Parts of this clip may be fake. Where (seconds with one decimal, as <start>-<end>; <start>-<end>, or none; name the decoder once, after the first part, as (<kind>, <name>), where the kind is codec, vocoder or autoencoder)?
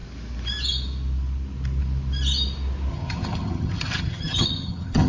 2.9-5.1 (vocoder, HiFi-GAN)